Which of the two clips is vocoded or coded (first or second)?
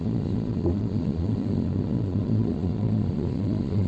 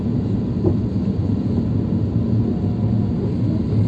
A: first